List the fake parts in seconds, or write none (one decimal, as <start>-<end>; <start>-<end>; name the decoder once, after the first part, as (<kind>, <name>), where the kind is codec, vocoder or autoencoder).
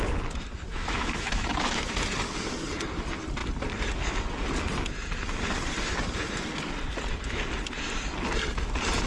0.7-1.9 (autoencoder, DAC-VAE)